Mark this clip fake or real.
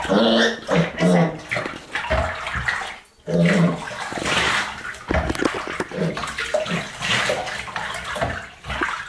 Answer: real